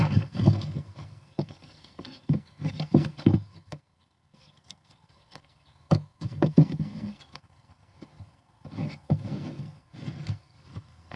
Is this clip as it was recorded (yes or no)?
no